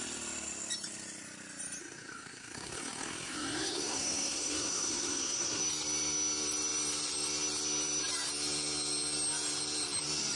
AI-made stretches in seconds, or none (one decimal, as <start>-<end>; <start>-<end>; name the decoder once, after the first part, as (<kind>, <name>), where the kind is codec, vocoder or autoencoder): 1.8-5.6 (codec, SNAC)

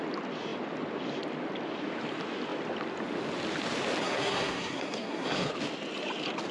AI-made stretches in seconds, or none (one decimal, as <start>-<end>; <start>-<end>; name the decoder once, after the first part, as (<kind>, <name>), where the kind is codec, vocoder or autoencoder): 4.0-5.5 (codec, SNAC)

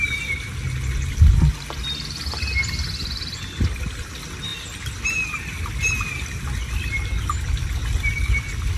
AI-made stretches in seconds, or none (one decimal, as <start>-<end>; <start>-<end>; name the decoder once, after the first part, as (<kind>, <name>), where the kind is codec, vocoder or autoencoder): 3.0-4.1 (vocoder, BigVGAN v2)

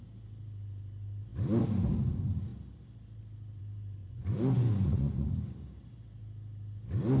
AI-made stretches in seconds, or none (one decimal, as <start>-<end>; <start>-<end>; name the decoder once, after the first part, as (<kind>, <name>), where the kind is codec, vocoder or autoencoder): 4.0-5.3 (vocoder, Vocos)

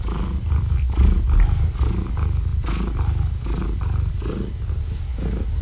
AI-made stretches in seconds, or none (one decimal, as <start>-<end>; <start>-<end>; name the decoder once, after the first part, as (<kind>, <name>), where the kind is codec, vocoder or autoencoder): none

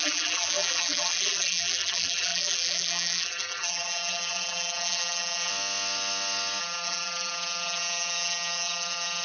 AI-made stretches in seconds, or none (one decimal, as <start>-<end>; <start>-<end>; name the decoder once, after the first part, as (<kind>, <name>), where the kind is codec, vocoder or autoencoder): 0.0-5.5 (vocoder, BigVGAN v2); 6.6-9.2